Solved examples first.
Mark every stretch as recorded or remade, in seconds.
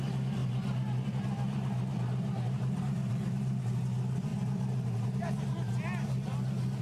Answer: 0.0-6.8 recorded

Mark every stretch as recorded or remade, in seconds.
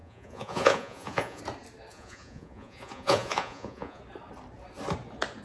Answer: 0.0-1.4 remade; 1.4-1.9 recorded; 1.9-4.0 remade; 4.0-5.4 recorded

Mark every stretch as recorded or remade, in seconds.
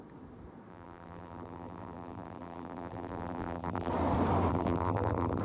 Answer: 0.0-0.7 recorded; 0.7-3.9 remade; 3.9-4.5 recorded; 4.5-5.4 remade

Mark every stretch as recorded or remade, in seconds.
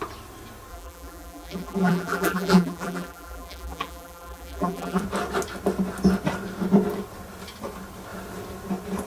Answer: 0.0-0.7 recorded; 0.7-5.0 remade; 5.0-9.1 recorded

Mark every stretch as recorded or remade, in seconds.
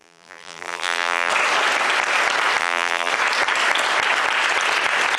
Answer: 0.0-1.3 remade; 1.3-2.6 recorded; 2.6-3.1 remade; 3.1-5.2 recorded